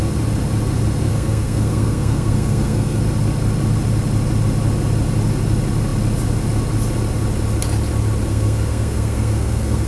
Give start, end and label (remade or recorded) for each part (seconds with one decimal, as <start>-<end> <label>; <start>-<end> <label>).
0.0-1.1 recorded; 1.1-3.0 remade; 3.0-8.3 recorded; 8.3-9.9 remade